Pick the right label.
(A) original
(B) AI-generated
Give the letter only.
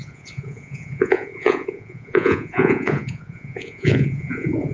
B